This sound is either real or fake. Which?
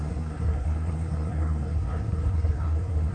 fake